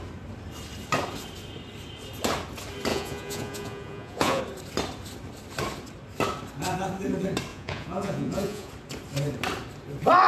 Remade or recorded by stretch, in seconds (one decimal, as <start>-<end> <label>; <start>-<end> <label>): 0.0-2.9 recorded; 2.9-4.4 remade; 4.4-7.5 recorded; 7.5-8.7 remade; 8.7-10.3 recorded